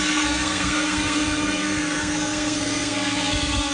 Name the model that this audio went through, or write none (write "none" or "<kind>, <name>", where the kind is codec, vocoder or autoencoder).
codec, SNAC